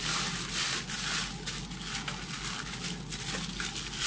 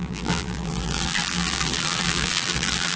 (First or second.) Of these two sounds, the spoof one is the second